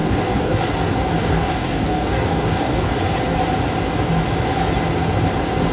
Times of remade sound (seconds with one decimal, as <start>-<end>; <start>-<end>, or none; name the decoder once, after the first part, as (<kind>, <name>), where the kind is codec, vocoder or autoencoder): 0.0-0.7 (codec, DAC); 1.2-3.0